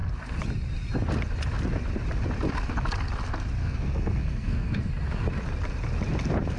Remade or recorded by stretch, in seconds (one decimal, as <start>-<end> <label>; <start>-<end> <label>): 0.0-3.6 recorded; 3.6-4.9 remade; 4.9-6.6 recorded